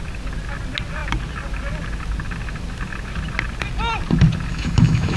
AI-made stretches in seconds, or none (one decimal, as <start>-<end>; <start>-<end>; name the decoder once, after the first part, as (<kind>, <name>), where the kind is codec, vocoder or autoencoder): 4.5-5.2 (autoencoder, DAC-VAE)